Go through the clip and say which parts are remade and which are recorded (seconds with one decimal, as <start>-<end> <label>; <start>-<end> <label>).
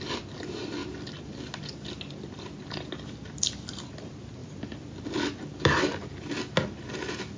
0.0-7.4 recorded